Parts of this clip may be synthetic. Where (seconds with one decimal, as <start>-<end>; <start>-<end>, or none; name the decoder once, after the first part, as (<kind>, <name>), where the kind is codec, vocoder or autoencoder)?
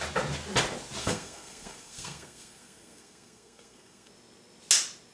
1.0-4.1 (codec, SNAC)